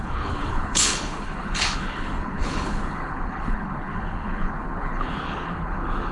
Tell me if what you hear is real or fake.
fake